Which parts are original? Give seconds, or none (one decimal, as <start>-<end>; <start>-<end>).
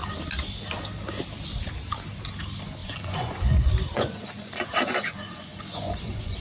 0.0-2.8